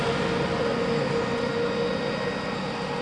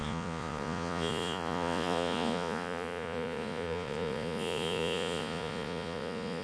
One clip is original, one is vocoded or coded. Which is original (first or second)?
first